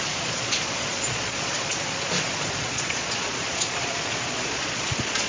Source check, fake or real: fake